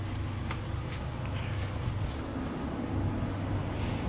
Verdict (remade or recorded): recorded